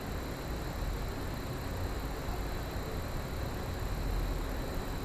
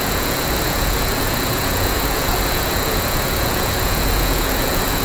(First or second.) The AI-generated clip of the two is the second